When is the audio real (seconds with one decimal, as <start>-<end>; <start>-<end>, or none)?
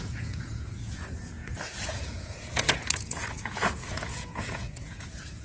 none